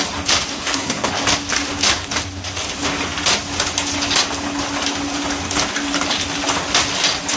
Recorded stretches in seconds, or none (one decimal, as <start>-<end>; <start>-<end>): 0.0-0.5; 1.1-7.4